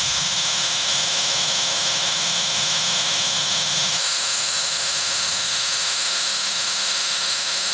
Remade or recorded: remade